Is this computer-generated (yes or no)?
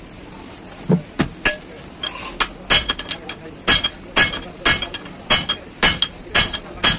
no